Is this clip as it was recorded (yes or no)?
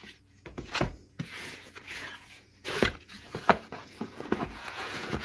no